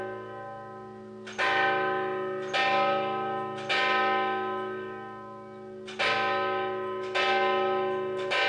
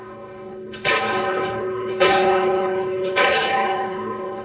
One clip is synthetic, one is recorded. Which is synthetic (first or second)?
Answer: second